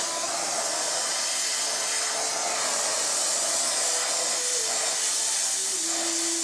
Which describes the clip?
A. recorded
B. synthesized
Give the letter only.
A